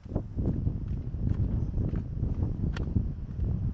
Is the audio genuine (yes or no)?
yes